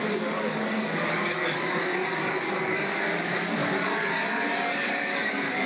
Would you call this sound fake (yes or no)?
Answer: yes